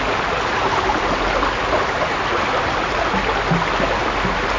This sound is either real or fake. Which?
real